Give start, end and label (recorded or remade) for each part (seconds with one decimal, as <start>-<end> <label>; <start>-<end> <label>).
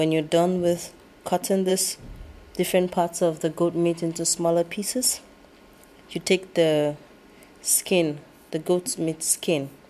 0.0-9.9 recorded